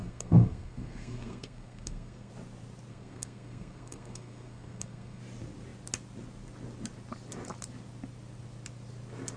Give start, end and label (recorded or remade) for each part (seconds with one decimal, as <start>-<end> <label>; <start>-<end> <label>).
0.0-2.3 remade; 2.3-2.9 recorded; 2.9-5.2 remade; 5.2-9.4 recorded